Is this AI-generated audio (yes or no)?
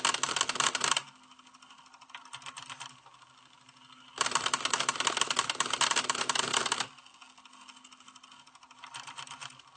no